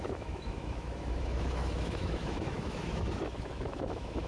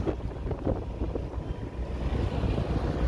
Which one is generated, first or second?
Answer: first